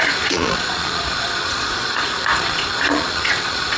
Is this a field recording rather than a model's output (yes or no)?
no